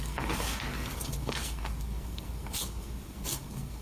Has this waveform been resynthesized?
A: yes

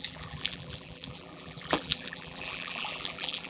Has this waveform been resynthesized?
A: yes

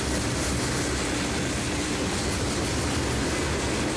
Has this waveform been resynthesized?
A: no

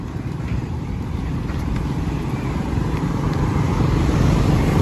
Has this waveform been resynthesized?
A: yes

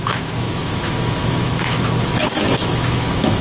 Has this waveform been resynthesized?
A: yes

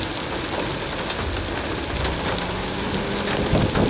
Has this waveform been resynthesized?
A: no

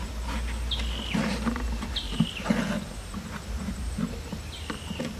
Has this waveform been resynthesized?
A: no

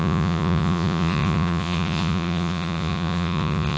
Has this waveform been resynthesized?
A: yes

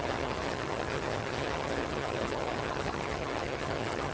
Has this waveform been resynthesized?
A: yes